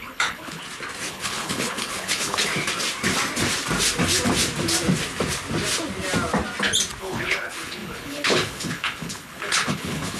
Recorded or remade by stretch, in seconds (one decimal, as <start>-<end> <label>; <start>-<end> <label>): 0.0-0.6 remade; 0.6-1.1 recorded; 1.1-2.5 remade; 2.5-7.0 recorded; 7.0-10.2 remade